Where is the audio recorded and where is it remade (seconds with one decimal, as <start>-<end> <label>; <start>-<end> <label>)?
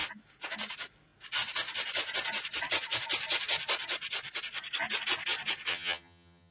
0.0-5.7 recorded; 5.7-6.5 remade